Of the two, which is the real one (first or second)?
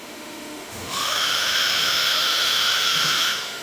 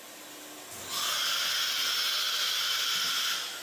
second